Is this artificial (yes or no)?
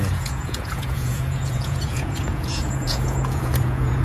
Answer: yes